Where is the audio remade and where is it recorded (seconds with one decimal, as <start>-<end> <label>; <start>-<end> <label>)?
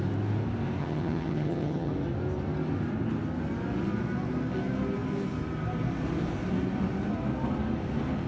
0.0-0.8 recorded; 0.8-1.9 remade; 1.9-8.3 recorded